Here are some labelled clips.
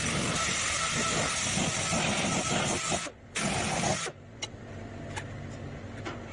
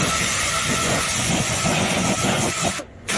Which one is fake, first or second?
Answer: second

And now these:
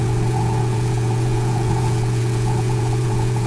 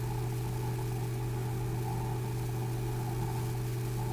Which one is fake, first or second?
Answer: first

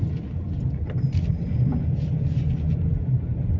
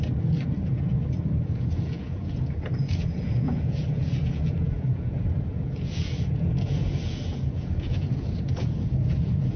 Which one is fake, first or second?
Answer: second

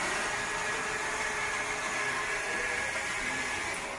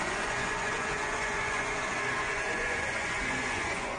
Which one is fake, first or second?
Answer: second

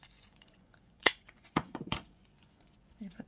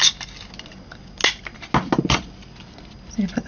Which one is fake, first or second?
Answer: first